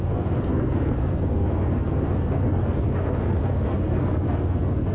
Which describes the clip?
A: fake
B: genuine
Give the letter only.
A